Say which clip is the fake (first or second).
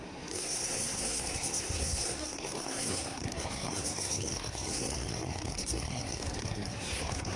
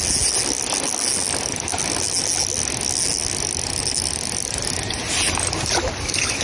first